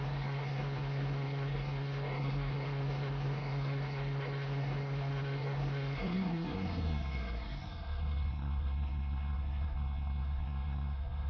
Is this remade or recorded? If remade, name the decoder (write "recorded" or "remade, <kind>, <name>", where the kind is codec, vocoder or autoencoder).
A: remade, codec, SNAC